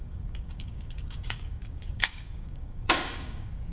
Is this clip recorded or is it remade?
remade